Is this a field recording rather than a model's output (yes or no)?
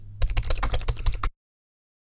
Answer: yes